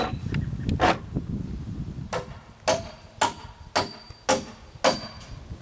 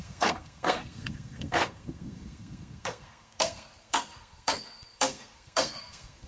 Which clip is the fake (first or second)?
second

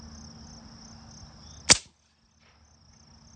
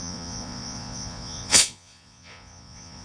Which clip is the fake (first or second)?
second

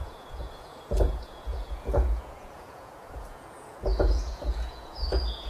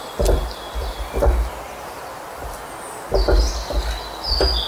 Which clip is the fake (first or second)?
first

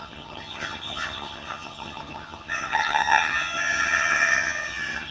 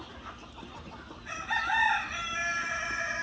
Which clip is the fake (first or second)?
first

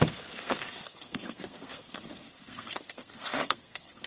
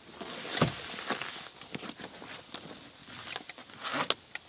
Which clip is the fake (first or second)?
first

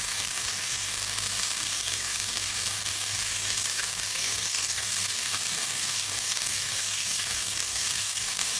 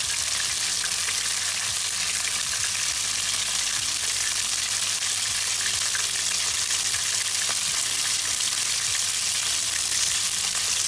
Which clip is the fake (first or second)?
first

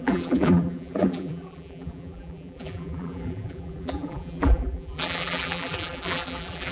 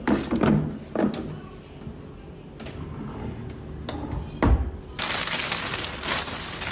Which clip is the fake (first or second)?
first